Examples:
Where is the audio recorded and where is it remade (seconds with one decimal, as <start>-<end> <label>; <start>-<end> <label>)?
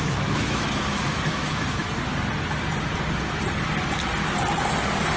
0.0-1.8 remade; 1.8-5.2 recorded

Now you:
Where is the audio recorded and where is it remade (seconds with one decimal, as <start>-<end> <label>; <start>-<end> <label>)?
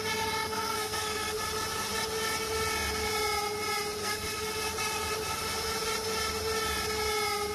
0.0-0.4 recorded; 0.4-1.4 remade; 1.4-4.0 recorded; 4.0-4.5 remade; 4.5-7.5 recorded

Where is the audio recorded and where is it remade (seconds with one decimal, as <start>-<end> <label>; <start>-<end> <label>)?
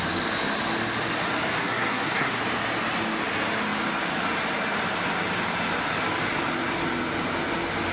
0.0-1.6 recorded; 1.6-2.4 remade; 2.4-7.9 recorded